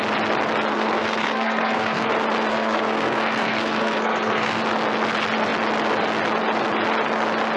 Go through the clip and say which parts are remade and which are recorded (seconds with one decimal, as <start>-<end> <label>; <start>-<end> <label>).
0.0-0.7 recorded; 0.7-2.1 remade; 2.1-2.5 recorded; 2.5-4.6 remade; 4.6-7.6 recorded